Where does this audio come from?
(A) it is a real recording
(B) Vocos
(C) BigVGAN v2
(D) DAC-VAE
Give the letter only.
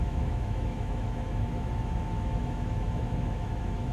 D